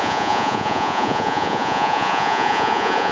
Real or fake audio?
fake